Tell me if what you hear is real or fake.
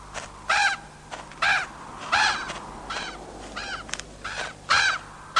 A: real